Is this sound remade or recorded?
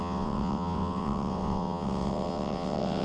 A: remade